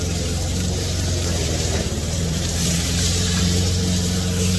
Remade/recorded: remade